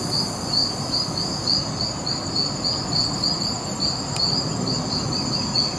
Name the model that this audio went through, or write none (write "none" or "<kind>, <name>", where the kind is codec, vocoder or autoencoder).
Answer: none